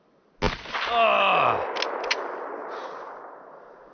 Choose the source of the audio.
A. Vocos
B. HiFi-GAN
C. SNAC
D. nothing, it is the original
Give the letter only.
D